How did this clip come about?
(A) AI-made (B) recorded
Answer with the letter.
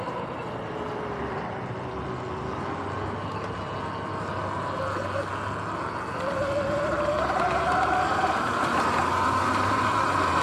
B